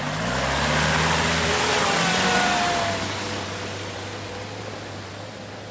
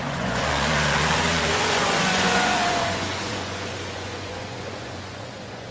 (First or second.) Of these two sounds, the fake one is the second